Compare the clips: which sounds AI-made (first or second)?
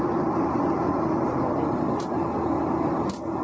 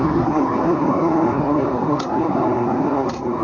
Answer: second